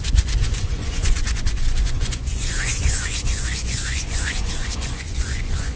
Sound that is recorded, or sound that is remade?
remade